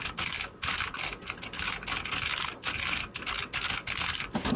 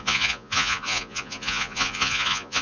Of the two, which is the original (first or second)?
first